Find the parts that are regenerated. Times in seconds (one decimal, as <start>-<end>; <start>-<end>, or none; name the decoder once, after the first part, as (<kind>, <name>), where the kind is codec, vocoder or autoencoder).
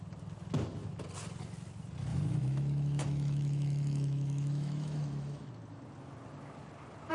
2.1-5.5 (autoencoder, DAC-VAE)